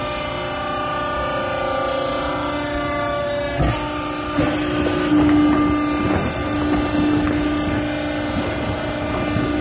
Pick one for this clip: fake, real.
real